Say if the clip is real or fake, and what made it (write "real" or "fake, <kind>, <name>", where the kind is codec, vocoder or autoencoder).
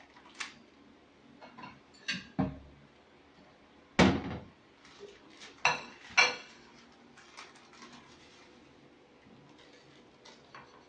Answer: real